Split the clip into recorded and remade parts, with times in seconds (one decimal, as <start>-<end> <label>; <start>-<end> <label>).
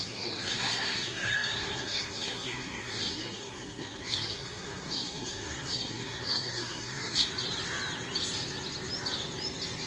0.0-7.3 remade; 7.3-9.9 recorded